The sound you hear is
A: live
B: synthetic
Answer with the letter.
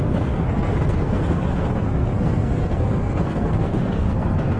B